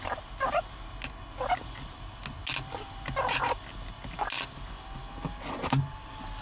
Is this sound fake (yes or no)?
no